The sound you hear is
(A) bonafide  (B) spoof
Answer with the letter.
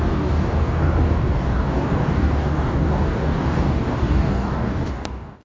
B